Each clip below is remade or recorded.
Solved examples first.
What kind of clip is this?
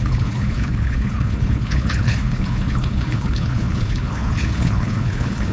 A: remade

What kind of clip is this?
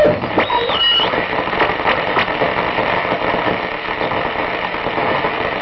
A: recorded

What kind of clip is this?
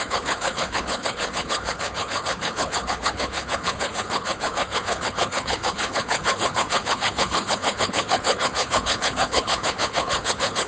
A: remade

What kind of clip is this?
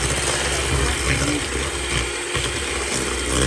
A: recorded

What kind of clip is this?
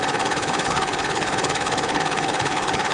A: remade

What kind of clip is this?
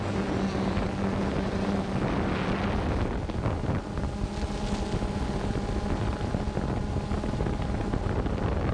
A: recorded